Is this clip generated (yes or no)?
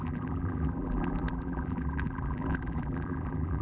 yes